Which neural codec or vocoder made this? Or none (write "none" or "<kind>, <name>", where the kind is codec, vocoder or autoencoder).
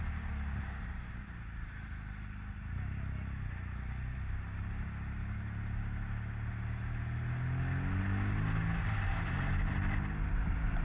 none